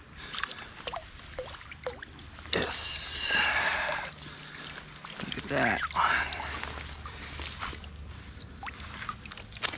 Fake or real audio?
real